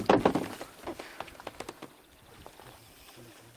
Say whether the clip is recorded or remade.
recorded